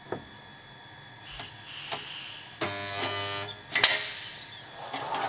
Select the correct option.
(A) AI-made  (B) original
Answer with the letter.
B